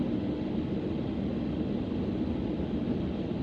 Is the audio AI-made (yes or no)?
no